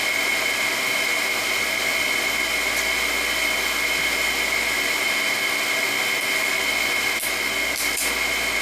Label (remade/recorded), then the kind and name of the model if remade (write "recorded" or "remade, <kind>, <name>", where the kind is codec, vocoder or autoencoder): recorded